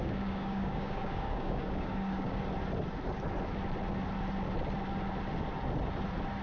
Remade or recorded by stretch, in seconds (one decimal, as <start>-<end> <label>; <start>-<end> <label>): 0.0-2.4 remade; 2.4-6.4 recorded